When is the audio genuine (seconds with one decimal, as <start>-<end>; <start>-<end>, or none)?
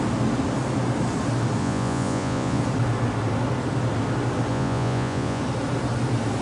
0.0-1.6; 2.6-4.5; 5.4-6.4